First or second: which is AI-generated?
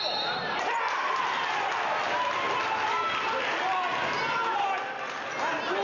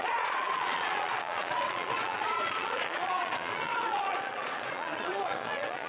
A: second